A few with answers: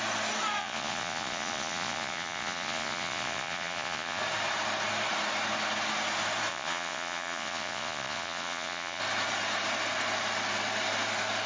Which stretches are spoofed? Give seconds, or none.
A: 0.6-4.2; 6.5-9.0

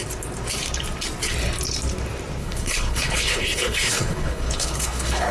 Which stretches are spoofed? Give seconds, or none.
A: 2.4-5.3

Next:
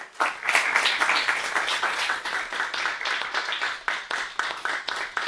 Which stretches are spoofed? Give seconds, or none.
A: 1.7-2.3